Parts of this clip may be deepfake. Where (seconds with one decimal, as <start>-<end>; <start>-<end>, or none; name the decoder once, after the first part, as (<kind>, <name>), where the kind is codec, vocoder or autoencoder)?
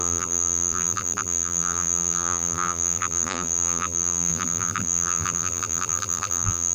0.0-6.7 (vocoder, BigVGAN v2)